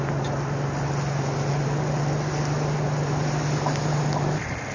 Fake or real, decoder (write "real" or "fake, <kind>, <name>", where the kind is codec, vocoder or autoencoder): real